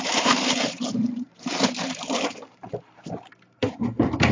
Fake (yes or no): yes